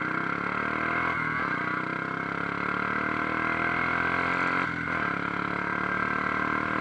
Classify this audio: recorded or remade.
recorded